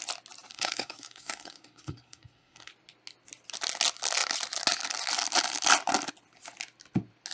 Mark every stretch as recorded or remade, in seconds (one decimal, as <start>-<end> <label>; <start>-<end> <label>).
0.0-0.5 recorded; 0.5-2.7 remade; 2.7-7.3 recorded